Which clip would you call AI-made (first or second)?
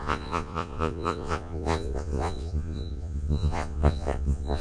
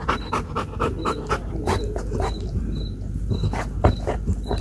first